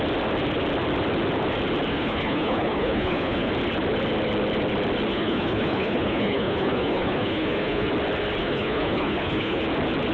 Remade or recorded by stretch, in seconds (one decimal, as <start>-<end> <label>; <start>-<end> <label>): 0.0-1.9 recorded; 1.9-3.5 remade; 3.5-5.1 recorded; 5.1-7.9 remade; 7.9-8.4 recorded; 8.4-9.6 remade; 9.6-10.1 recorded